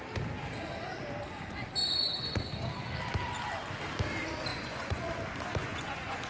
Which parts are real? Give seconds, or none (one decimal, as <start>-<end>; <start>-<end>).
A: 0.0-1.8; 2.4-4.5; 5.1-5.6